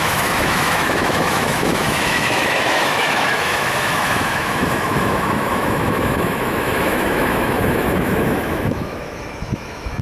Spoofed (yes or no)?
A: yes